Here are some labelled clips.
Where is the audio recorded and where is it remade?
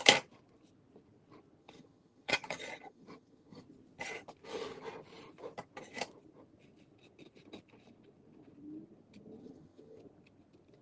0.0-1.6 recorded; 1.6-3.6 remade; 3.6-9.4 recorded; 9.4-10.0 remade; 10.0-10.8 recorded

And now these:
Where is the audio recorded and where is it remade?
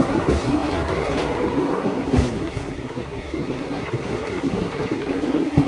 0.0-5.7 remade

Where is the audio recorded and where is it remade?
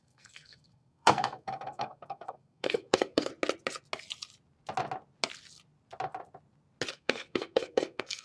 0.0-3.3 remade; 3.3-6.9 recorded; 6.9-8.2 remade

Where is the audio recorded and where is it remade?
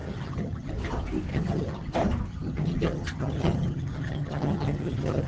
0.0-0.7 remade; 0.7-1.3 recorded; 1.3-1.9 remade; 1.9-2.3 recorded; 2.3-5.3 remade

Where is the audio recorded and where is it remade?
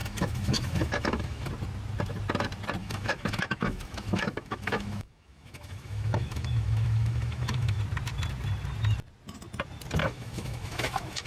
0.0-1.5 remade; 1.5-2.8 recorded; 2.8-7.8 remade; 7.8-10.0 recorded; 10.0-11.3 remade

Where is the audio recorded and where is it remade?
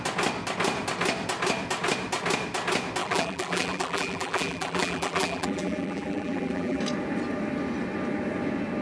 0.0-3.0 recorded; 3.0-6.8 remade; 6.8-8.8 recorded